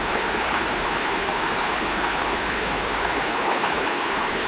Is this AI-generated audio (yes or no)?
yes